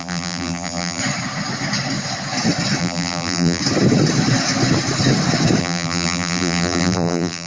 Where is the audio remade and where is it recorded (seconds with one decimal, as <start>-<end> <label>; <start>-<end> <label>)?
0.0-1.0 remade; 1.0-2.8 recorded; 2.8-3.6 remade; 3.6-5.6 recorded; 5.6-7.5 remade